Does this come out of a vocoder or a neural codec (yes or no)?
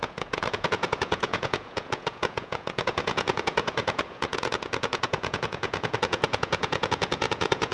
yes